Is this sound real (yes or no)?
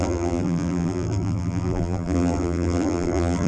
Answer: no